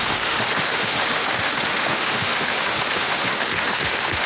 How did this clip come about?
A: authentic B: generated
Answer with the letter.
B